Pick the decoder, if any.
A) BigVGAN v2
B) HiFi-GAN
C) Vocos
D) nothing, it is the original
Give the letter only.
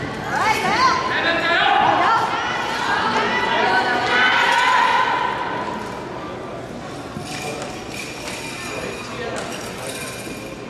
D